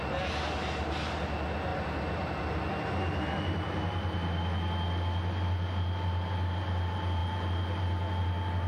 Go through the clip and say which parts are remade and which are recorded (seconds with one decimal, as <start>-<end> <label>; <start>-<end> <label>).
0.0-8.7 recorded

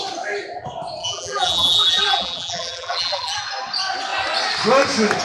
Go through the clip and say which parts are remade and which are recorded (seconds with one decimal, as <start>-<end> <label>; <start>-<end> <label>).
0.0-1.0 recorded; 1.0-3.4 remade; 3.4-5.2 recorded

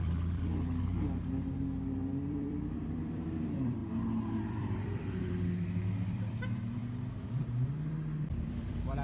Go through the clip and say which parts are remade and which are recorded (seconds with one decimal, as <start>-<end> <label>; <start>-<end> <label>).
0.0-0.4 remade; 0.4-2.3 recorded; 2.3-3.8 remade; 3.8-4.5 recorded; 4.5-6.8 remade; 6.8-8.3 recorded; 8.3-9.0 remade

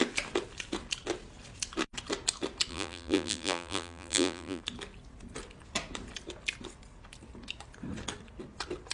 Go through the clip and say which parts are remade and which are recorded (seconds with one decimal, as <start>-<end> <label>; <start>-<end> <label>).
0.0-2.7 recorded; 2.7-4.6 remade; 4.6-8.9 recorded

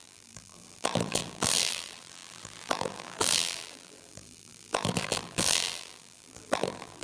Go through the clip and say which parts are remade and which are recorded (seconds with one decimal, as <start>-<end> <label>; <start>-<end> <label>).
0.0-7.0 remade

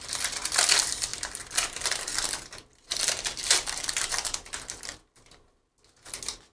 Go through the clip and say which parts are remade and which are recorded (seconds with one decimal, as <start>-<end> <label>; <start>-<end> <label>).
0.0-1.1 recorded; 1.1-5.0 remade; 5.0-6.5 recorded